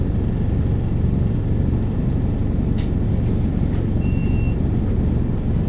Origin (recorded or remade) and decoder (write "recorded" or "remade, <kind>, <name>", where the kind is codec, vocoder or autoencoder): remade, vocoder, BigVGAN v2